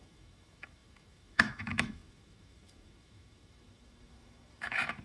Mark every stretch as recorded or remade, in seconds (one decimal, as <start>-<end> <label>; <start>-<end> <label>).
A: 0.0-5.0 remade